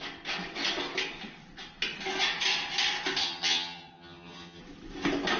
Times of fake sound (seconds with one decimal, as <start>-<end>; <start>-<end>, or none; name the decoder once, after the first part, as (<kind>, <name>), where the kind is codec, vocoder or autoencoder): 3.2-4.6 (vocoder, HiFi-GAN)